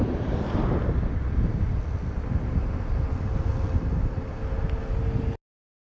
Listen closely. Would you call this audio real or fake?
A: real